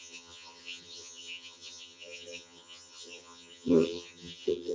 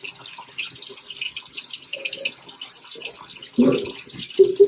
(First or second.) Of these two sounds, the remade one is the first